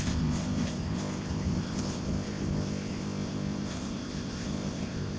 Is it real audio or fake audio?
fake